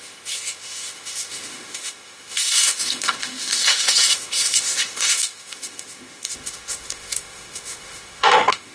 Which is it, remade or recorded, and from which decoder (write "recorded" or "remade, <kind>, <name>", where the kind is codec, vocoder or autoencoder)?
remade, autoencoder, DAC-VAE